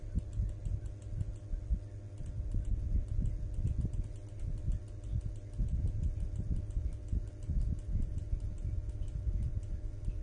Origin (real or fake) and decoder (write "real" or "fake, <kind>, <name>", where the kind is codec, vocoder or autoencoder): real